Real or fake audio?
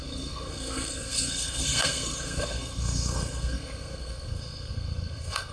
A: fake